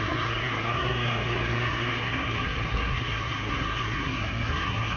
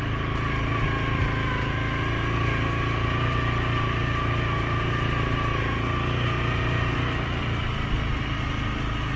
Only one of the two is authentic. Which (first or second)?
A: second